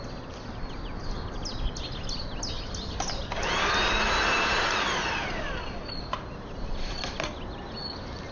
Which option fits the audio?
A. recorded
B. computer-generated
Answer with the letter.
A